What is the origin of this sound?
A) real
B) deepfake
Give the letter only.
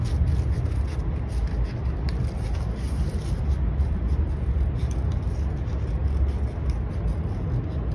A